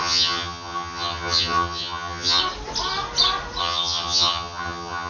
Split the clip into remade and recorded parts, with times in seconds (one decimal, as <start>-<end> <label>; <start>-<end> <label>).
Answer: 0.0-2.4 remade; 2.4-3.6 recorded; 3.6-5.1 remade